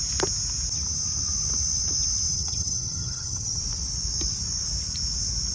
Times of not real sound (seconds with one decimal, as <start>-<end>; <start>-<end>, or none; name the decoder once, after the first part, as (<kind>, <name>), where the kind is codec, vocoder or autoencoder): 2.3-3.6 (vocoder, HiFi-GAN)